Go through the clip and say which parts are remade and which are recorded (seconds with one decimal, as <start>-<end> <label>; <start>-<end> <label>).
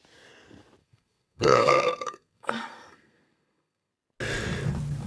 0.0-0.8 recorded; 0.8-3.9 remade; 3.9-5.1 recorded